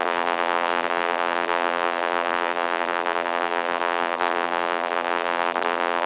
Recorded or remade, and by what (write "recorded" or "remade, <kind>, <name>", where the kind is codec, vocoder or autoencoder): remade, vocoder, BigVGAN v2